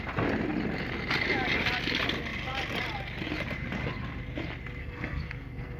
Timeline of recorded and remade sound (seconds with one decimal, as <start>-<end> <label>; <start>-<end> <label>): 0.0-4.8 recorded; 4.8-5.8 remade